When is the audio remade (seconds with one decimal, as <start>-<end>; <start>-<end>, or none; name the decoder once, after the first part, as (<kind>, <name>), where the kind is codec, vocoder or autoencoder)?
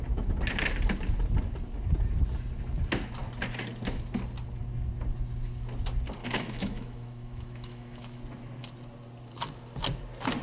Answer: 6.2-8.2 (autoencoder, DAC-VAE)